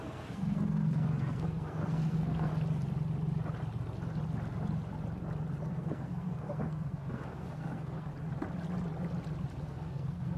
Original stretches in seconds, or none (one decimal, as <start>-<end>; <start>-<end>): 2.5-5.7; 8.1-9.6